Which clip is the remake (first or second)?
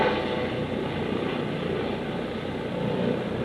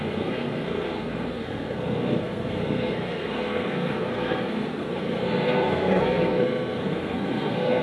second